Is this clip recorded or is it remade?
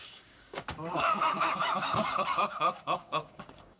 remade